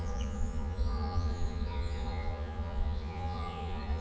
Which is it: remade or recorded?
remade